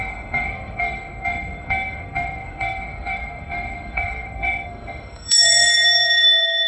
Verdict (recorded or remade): remade